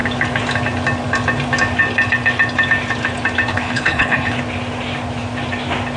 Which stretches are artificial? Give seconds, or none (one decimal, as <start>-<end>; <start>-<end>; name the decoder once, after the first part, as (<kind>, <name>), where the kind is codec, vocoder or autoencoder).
3.5-4.4 (codec, HILCodec)